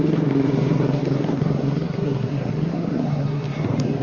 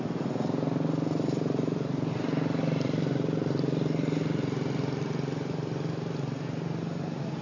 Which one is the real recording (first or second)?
second